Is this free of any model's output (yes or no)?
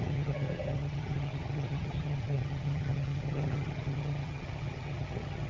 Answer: no